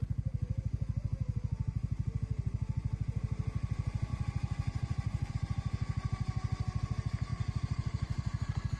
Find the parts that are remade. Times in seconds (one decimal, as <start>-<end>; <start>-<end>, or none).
4.1-5.3; 7.3-8.8